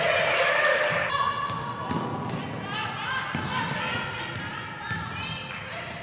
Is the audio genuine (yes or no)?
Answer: yes